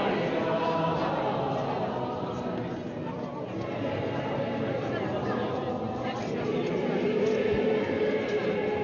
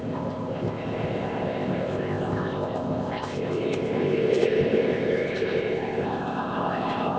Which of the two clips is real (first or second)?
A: first